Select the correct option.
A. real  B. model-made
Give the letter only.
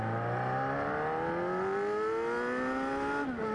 A